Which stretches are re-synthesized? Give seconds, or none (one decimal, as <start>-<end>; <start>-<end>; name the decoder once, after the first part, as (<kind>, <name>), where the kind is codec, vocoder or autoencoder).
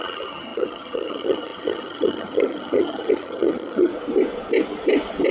0.0-3.9 (vocoder, HiFi-GAN)